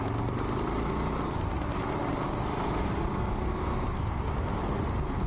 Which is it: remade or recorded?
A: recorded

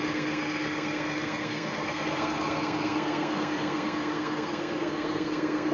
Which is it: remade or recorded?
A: remade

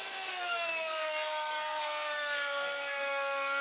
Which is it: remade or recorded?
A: remade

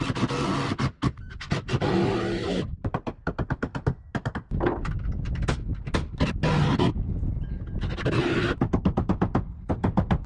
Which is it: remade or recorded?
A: recorded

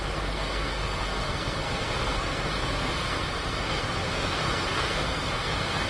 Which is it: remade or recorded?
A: remade